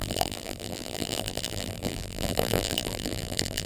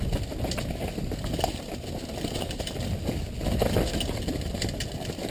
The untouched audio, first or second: second